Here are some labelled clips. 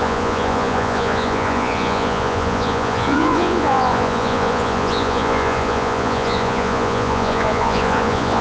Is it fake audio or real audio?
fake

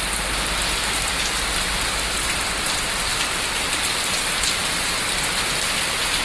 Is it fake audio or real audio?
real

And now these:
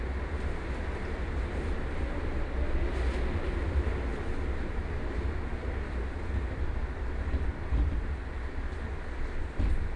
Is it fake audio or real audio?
real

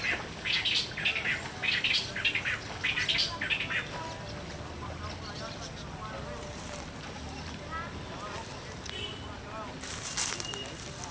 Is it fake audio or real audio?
real